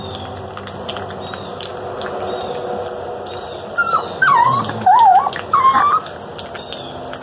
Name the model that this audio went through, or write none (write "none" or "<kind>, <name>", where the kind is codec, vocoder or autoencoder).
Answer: none